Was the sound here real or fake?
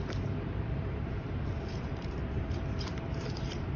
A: fake